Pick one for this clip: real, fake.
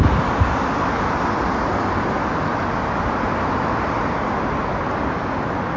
real